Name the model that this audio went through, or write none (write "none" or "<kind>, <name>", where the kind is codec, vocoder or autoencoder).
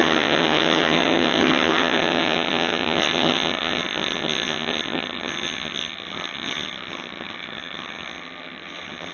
vocoder, HiFi-GAN